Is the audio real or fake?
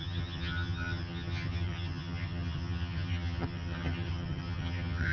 fake